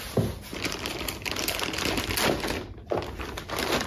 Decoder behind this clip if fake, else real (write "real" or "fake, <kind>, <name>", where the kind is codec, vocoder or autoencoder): real